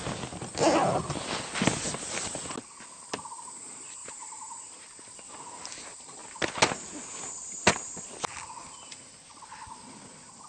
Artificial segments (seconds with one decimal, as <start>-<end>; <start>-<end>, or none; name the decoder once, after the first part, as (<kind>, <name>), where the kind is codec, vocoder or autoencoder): none